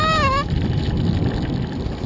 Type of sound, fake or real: real